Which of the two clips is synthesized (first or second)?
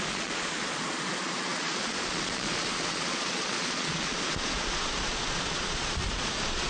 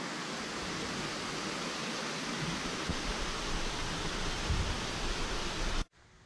first